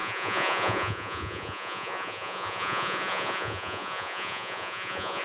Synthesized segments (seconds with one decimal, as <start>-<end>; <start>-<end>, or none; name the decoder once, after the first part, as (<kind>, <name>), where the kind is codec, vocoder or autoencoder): 0.0-5.2 (vocoder, Vocos)